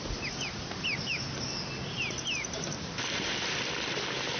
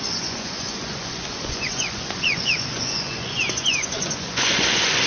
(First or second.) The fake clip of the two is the second